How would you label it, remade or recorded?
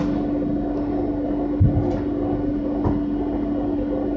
recorded